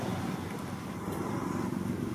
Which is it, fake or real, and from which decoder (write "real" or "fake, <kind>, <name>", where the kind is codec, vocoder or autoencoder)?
real